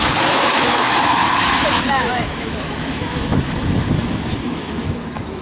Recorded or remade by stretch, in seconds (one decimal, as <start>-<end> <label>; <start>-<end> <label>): 0.0-5.4 remade